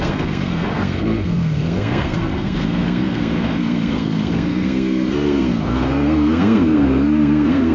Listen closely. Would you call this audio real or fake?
fake